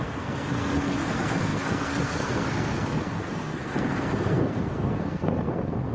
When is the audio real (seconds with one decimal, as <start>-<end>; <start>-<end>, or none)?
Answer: none